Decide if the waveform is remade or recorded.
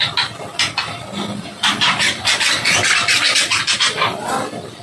recorded